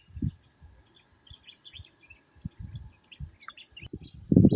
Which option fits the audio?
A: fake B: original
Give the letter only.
B